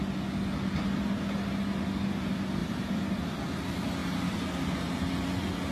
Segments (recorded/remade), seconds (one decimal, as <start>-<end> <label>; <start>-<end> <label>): 0.0-2.6 recorded; 2.6-3.4 remade; 3.4-4.0 recorded; 4.0-4.8 remade; 4.8-5.7 recorded